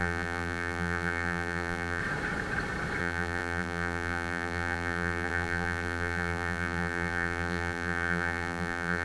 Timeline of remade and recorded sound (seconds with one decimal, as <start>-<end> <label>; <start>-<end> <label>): 0.0-2.0 remade; 2.0-3.0 recorded; 3.0-9.0 remade